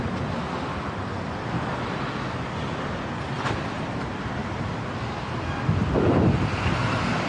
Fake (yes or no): no